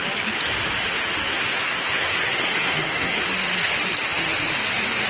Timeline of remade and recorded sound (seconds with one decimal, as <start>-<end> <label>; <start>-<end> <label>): 0.0-1.2 recorded; 1.2-3.2 remade; 3.2-5.1 recorded